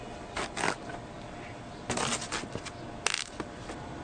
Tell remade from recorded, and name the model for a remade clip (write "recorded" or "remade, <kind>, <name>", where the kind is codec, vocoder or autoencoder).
recorded